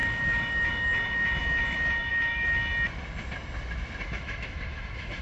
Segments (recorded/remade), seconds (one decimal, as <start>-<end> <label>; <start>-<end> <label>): 0.0-2.7 remade; 2.7-4.0 recorded; 4.0-5.2 remade